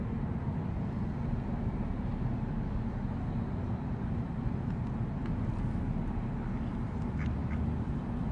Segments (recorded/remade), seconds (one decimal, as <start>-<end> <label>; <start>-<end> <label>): 0.0-8.3 recorded